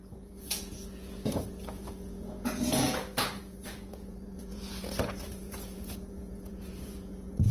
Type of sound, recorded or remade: remade